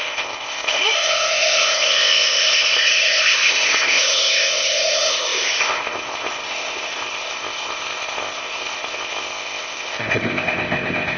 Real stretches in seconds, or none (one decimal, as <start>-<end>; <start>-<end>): none